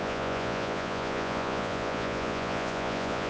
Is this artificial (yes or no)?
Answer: yes